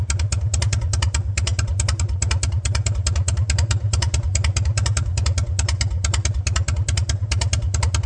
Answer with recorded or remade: recorded